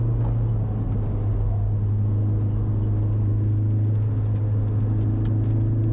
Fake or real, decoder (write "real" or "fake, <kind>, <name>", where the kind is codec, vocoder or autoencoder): real